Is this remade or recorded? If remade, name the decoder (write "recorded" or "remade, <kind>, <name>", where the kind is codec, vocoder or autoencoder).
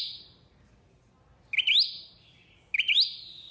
recorded